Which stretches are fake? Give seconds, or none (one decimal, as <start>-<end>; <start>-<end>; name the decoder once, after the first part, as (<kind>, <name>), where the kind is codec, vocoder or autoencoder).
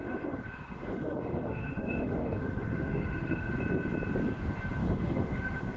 0.0-3.5 (autoencoder, DAC-VAE); 4.8-5.8